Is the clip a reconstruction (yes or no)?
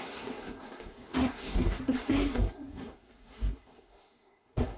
yes